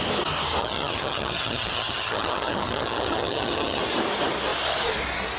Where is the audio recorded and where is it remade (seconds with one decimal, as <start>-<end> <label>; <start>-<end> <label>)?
0.0-0.6 recorded; 0.6-3.8 remade; 3.8-5.4 recorded